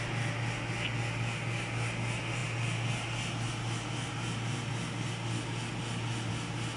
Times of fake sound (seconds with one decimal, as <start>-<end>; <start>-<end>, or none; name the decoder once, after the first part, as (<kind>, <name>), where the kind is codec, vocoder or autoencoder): none